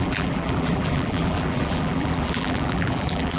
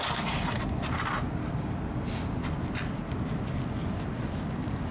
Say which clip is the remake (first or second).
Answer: first